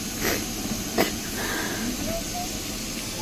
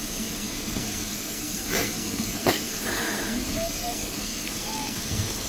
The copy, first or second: second